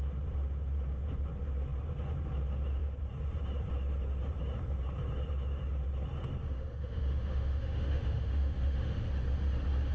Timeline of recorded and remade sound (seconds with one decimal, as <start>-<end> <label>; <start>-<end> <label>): 0.0-6.4 recorded; 6.4-9.1 remade; 9.1-9.9 recorded